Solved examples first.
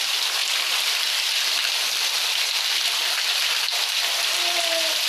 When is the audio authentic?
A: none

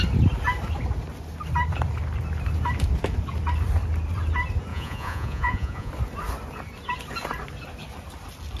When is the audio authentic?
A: 0.0-4.7; 5.9-8.6